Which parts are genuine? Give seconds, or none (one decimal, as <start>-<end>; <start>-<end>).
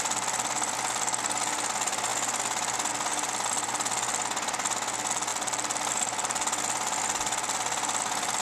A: 0.0-8.4